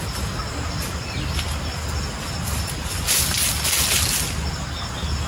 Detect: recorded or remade recorded